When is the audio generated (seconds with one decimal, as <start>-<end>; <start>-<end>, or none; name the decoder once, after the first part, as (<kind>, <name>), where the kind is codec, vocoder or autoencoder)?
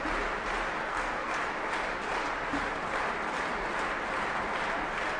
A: 0.8-1.3 (codec, SNAC)